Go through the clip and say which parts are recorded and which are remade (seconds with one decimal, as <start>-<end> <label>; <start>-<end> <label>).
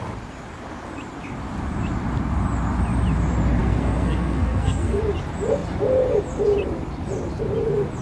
0.0-3.6 recorded; 3.6-5.0 remade; 5.0-8.0 recorded